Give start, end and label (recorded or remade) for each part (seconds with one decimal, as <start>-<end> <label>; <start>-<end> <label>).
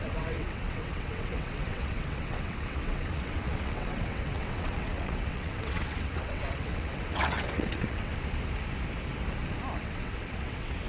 0.0-8.1 remade; 8.1-9.8 recorded; 9.8-10.9 remade